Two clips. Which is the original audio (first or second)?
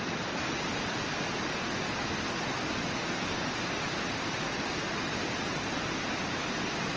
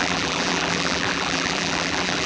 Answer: first